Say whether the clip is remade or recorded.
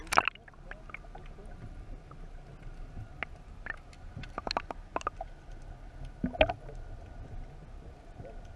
recorded